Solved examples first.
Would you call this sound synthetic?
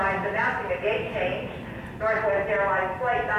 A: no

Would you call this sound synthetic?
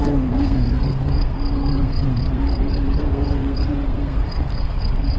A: yes